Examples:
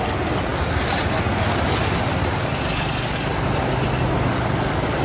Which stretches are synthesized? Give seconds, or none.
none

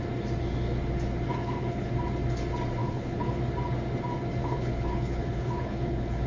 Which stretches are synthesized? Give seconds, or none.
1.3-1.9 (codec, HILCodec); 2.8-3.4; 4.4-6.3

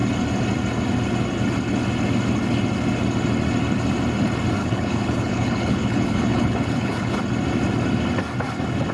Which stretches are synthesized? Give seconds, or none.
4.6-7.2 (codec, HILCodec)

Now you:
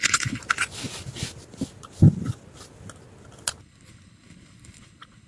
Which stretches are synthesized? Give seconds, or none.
0.0-0.4 (codec, HILCodec); 3.6-5.3

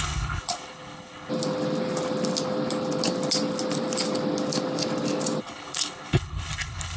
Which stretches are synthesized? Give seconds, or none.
0.0-1.3 (codec, HILCodec); 5.4-7.0

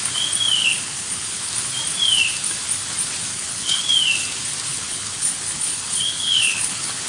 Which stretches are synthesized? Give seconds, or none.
0.6-1.5 (codec, HILCodec); 3.3-3.8; 4.7-7.1

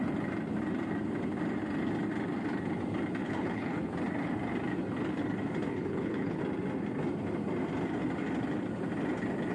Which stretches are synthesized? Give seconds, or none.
3.2-3.9 (codec, HILCodec); 5.7-6.4